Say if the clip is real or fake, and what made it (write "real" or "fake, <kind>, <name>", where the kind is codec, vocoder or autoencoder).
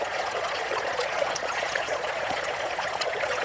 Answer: fake, vocoder, Vocos